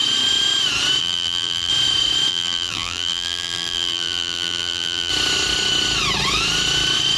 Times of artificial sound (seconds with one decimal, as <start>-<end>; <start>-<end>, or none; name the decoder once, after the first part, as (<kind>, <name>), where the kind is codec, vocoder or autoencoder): 1.0-1.7 (vocoder, BigVGAN v2); 2.3-5.1